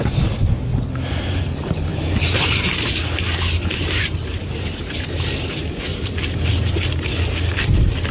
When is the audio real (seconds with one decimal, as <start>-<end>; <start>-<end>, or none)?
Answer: 0.0-0.7; 1.4-1.9; 2.7-4.4; 5.5-5.9; 6.9-8.1